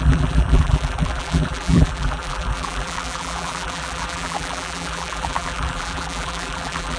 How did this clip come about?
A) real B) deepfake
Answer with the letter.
B